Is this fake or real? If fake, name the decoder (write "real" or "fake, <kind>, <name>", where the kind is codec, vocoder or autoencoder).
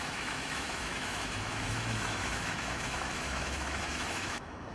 fake, autoencoder, DAC-VAE